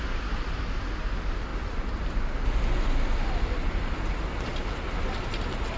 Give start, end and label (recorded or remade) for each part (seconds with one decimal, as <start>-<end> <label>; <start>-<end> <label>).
0.0-5.8 recorded